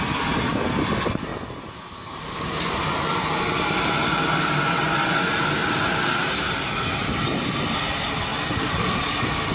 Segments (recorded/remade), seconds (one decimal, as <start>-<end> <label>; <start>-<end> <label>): 0.0-6.9 recorded; 6.9-7.5 remade; 7.5-9.5 recorded